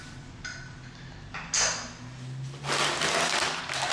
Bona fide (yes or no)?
yes